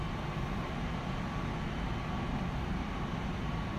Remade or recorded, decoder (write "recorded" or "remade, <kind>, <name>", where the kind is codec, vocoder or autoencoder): recorded